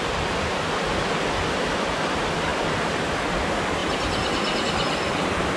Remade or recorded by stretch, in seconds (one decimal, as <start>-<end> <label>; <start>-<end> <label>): 0.0-5.6 recorded